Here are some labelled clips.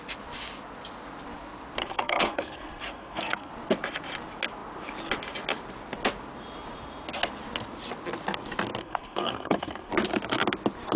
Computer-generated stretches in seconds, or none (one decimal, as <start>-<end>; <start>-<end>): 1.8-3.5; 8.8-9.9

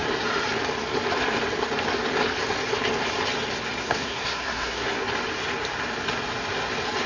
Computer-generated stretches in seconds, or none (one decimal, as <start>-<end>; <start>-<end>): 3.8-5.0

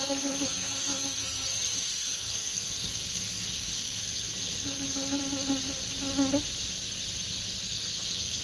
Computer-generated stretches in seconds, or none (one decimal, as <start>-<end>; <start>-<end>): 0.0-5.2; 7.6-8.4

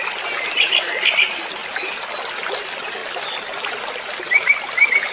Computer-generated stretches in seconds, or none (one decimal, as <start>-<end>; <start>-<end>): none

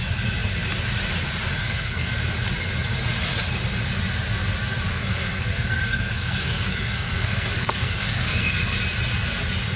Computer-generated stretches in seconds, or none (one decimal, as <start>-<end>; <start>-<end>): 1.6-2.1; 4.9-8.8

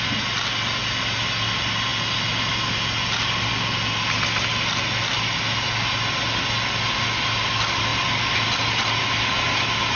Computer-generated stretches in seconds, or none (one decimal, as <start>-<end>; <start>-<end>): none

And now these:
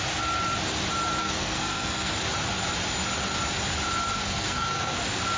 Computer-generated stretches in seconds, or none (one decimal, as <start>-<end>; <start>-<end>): 1.2-2.1; 4.1-5.0

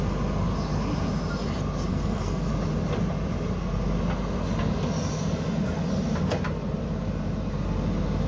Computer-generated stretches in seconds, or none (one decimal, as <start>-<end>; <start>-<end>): 1.9-2.5